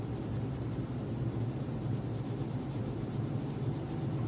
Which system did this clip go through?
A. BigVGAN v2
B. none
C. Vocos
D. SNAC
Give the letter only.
B